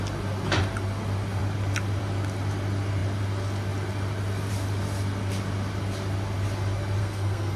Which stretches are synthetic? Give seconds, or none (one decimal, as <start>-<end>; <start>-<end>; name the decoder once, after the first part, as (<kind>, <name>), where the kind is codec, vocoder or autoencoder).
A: 7.0-7.6 (codec, SNAC)

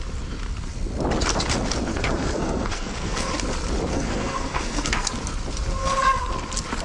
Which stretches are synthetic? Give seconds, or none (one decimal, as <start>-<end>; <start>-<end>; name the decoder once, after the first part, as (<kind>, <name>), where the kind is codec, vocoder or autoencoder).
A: 1.9-3.3 (codec, SNAC); 3.9-5.1; 5.8-6.3

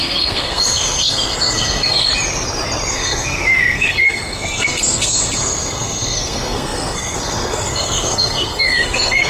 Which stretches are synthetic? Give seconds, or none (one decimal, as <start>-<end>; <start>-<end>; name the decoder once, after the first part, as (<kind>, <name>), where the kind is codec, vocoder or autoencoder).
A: 0.0-2.1 (codec, SNAC); 2.9-9.3